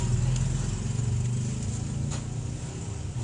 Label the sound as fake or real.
real